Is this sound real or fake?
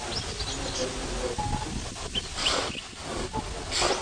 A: real